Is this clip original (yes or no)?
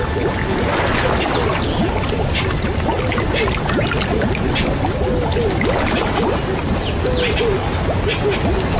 yes